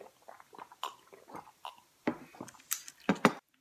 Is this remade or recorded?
recorded